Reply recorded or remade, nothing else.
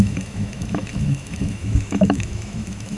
remade